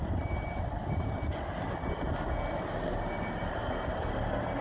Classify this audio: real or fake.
real